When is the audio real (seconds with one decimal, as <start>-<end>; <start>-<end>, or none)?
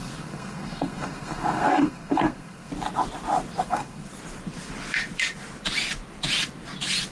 2.7-3.6; 4.1-7.1